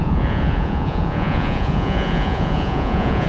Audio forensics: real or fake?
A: fake